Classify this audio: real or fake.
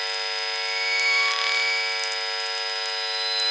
real